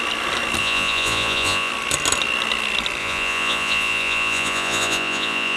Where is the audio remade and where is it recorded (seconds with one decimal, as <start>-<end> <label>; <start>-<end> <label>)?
0.0-0.6 recorded; 0.6-1.7 remade; 1.7-3.0 recorded; 3.0-5.6 remade